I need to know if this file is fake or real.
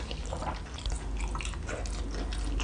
real